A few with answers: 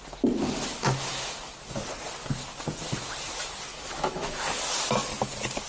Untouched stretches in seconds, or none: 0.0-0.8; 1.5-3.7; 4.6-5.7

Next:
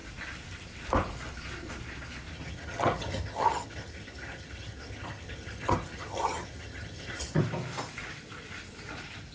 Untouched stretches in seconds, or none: 0.0-2.3; 7.4-9.3

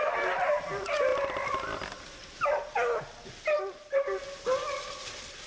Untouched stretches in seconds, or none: 0.0-5.5